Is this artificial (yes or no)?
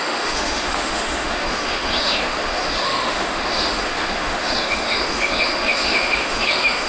yes